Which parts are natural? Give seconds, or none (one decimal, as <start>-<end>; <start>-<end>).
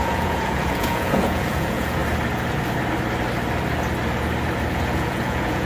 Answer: 2.0-4.7